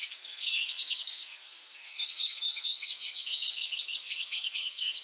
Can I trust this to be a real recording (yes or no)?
no